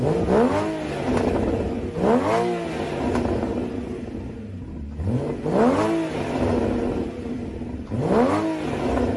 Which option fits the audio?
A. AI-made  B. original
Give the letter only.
B